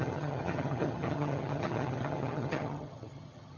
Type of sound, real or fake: fake